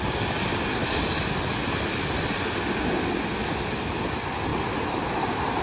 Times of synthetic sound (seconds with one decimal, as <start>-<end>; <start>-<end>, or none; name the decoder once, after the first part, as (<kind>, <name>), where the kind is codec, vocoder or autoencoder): 3.4-4.0 (vocoder, BigVGAN v2); 4.5-5.6